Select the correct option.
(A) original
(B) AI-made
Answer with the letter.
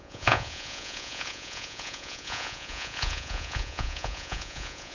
B